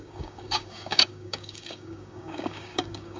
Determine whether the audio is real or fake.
fake